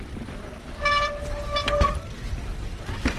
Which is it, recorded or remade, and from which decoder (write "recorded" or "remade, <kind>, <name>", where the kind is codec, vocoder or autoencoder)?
recorded